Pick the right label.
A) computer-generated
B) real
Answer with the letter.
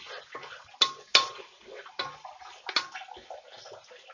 B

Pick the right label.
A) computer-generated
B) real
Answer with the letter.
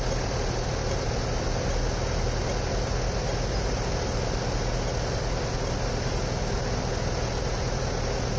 B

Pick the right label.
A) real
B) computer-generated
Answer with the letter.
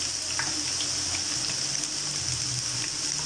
A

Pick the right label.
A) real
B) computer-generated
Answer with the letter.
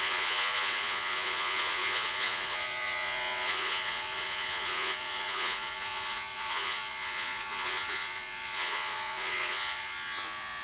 B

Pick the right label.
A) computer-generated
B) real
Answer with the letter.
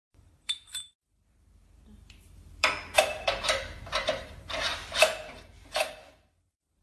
A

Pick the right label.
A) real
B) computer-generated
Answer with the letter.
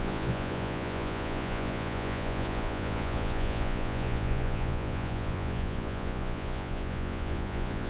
B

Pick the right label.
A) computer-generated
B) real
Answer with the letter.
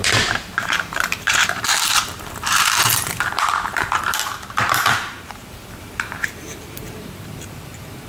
A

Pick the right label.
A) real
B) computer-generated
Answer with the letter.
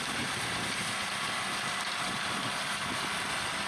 A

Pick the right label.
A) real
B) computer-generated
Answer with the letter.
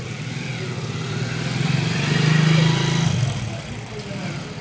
A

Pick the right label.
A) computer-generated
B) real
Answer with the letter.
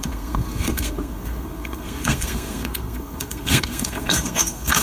A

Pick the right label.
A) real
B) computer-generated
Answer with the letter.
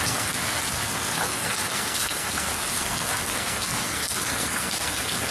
B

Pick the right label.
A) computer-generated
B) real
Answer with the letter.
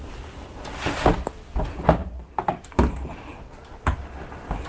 B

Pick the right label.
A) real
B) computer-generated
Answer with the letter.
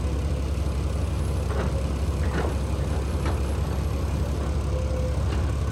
A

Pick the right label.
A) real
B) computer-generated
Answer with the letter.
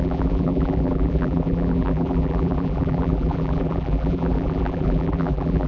B